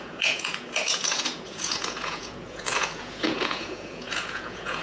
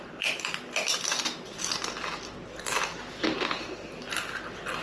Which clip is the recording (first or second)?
second